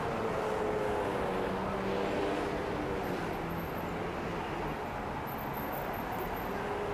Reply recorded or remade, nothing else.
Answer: recorded